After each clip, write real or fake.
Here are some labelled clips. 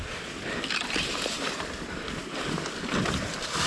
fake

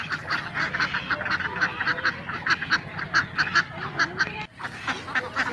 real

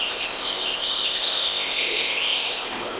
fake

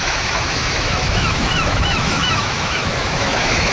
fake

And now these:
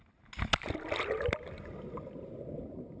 real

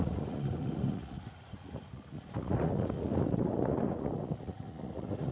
fake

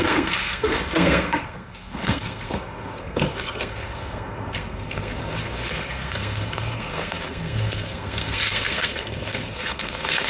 fake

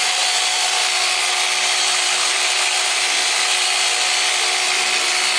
real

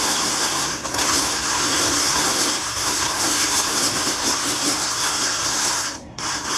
fake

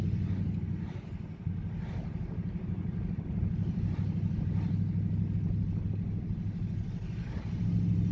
real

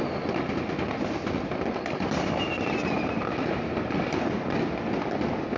real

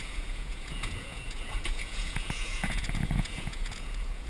fake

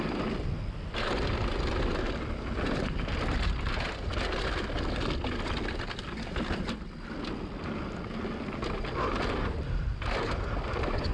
real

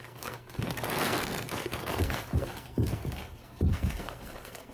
fake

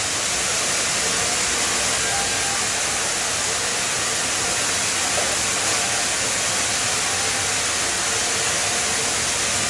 real